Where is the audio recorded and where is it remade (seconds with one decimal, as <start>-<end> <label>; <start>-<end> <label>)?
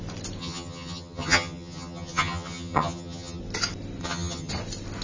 0.0-0.4 recorded; 0.4-3.4 remade; 3.4-4.0 recorded; 4.0-4.5 remade; 4.5-5.0 recorded